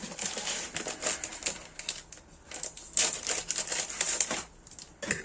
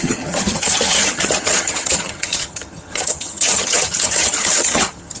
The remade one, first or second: second